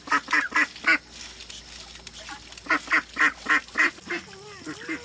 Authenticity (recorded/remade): recorded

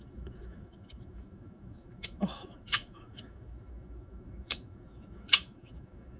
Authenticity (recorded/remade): remade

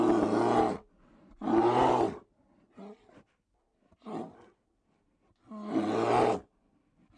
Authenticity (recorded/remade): recorded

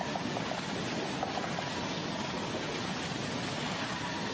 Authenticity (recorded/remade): recorded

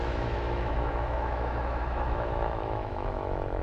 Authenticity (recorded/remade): remade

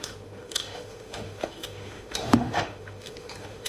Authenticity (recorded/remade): remade